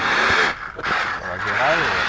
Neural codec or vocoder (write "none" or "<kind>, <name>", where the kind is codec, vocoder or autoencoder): none